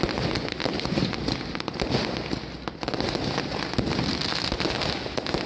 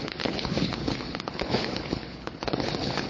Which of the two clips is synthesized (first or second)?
second